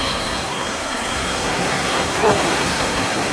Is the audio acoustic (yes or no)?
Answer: no